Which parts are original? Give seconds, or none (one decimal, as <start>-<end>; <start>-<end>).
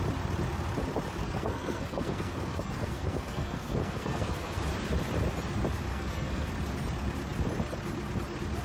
0.0-1.2; 4.6-5.9; 6.5-8.6